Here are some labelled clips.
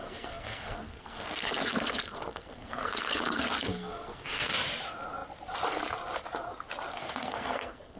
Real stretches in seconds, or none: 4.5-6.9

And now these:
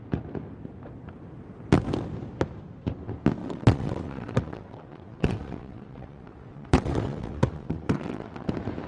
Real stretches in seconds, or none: 0.0-3.4; 8.5-8.9

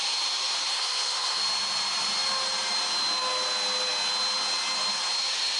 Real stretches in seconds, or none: 0.0-0.7; 1.4-5.6

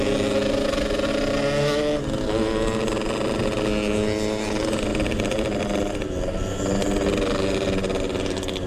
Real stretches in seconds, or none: 0.0-4.9; 5.6-8.7

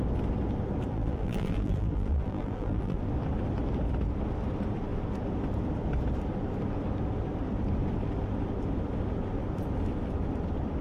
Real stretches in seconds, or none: 0.0-0.9; 3.0-10.8

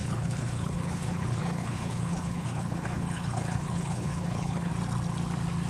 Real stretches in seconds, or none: 4.7-5.7

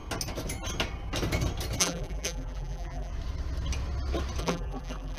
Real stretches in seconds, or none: 0.0-1.8; 3.1-4.4

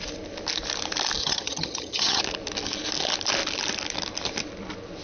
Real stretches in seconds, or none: 0.0-1.2; 2.2-5.0